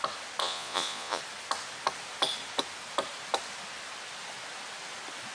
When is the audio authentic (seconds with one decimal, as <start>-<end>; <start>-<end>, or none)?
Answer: 0.0-0.4; 1.2-5.3